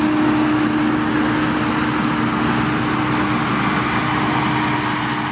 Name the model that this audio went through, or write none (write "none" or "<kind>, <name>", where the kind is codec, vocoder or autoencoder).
none